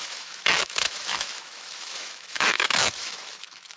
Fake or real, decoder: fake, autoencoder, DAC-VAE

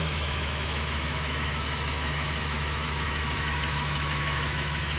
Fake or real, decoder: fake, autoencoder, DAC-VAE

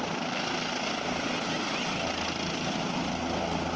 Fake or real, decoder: real